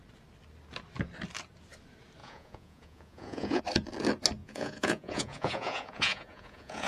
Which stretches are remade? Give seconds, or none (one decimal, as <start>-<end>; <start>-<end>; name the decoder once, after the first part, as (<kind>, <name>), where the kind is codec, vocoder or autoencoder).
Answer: 2.2-3.6 (vocoder, Vocos); 4.4-6.9